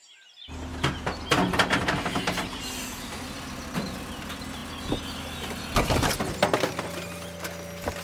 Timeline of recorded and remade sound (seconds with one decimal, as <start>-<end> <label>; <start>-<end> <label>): 0.0-8.0 recorded